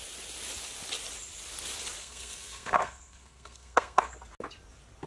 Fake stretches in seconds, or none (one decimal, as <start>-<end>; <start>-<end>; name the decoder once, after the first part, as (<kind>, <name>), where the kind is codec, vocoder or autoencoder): 2.0-4.1 (codec, SNAC)